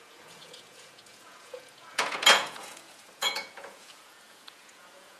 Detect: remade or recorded remade